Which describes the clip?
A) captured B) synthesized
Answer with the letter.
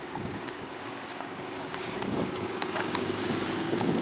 B